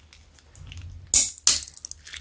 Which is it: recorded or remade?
recorded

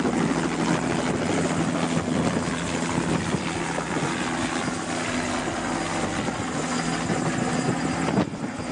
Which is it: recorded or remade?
recorded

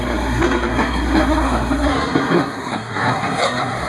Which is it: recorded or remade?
remade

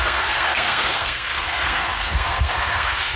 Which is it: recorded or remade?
remade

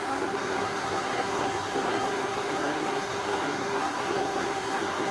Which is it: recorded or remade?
remade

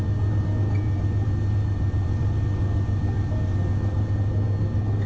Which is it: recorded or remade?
recorded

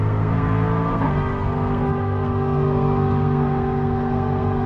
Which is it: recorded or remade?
remade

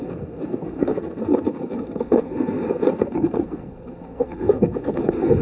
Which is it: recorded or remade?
remade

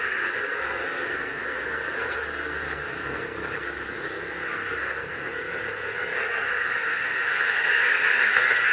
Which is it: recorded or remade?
remade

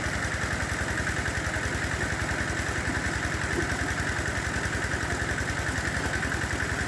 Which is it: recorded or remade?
recorded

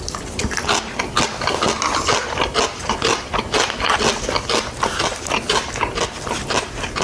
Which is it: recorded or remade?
recorded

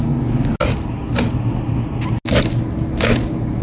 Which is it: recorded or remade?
recorded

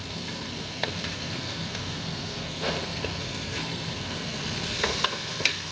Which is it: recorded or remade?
remade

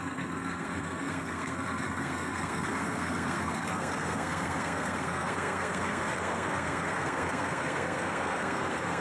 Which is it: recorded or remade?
remade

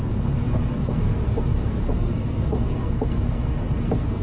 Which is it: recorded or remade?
remade